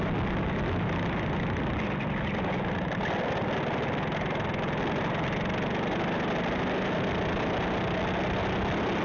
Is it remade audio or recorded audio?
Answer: recorded